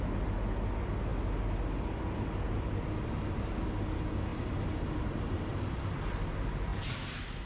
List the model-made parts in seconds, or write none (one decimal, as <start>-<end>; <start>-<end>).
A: none